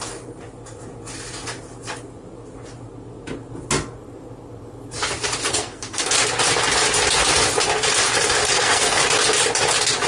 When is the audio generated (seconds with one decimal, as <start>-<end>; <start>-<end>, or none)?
5.5-6.1; 8.4-9.0